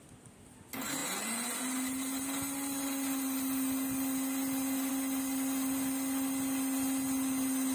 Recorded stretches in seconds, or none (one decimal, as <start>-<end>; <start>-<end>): 0.0-7.7